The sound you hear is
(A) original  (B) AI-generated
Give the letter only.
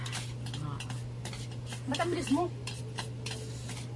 A